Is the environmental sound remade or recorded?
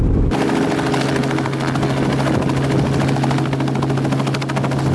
recorded